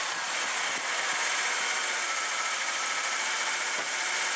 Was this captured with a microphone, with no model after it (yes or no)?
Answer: yes